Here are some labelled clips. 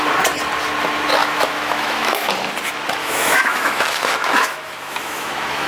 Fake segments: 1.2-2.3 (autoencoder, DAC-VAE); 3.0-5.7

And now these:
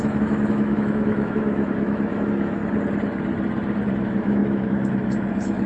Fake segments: 0.0-2.6 (autoencoder, DAC-VAE); 4.0-5.7

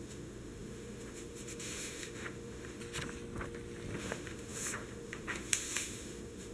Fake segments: 0.0-2.8 (autoencoder, DAC-VAE); 4.0-6.5

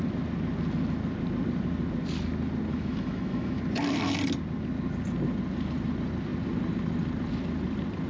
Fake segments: 2.7-3.6 (autoencoder, DAC-VAE)

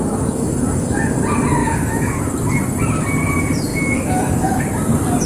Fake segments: 1.6-2.2 (autoencoder, DAC-VAE); 3.7-4.6